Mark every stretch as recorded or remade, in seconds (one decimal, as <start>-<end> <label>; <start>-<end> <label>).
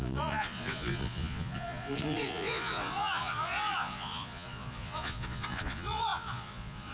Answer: 0.0-6.9 remade